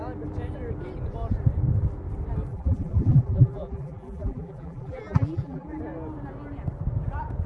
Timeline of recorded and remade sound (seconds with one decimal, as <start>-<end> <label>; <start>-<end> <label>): 0.0-2.5 recorded; 2.5-5.8 remade; 5.8-7.5 recorded